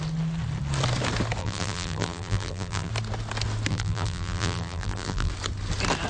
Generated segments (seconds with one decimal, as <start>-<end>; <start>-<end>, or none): 1.4-2.9; 3.7-5.3